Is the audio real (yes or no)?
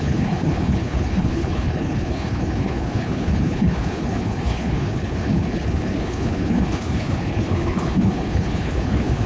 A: no